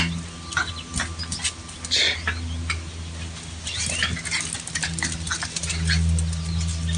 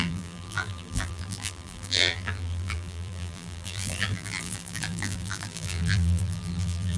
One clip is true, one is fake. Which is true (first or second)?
first